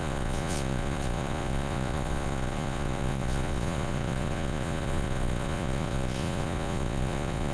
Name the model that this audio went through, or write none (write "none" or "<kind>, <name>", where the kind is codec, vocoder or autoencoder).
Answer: vocoder, Vocos